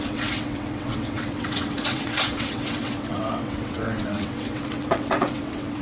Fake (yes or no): yes